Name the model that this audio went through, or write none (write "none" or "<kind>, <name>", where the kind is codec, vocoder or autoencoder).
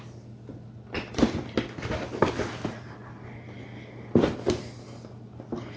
none